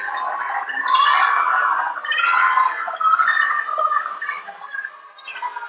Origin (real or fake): real